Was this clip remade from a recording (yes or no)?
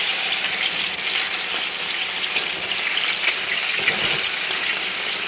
no